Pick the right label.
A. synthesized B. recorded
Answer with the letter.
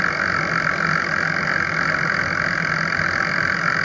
B